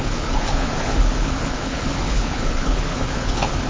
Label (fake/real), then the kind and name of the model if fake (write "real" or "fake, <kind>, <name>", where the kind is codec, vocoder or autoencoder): fake, codec, HILCodec